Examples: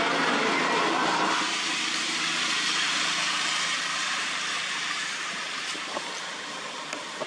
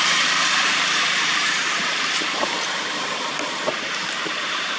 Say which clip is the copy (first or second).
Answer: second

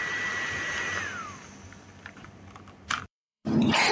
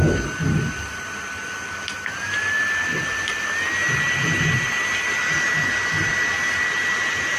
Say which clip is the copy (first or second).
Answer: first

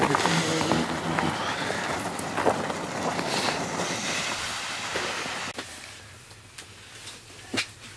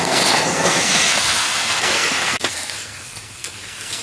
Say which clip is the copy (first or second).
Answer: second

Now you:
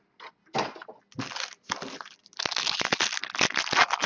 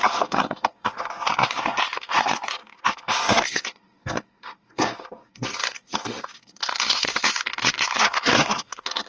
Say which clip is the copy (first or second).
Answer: second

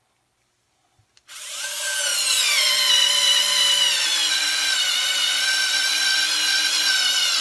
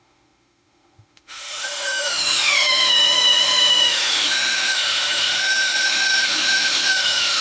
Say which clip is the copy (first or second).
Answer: second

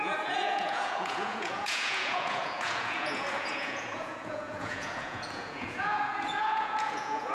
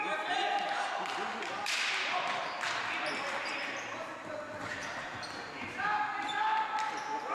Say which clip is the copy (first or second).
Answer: first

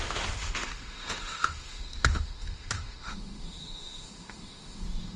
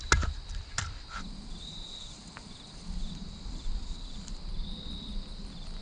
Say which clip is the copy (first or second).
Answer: first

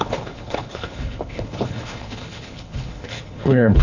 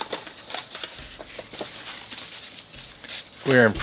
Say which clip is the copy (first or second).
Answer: first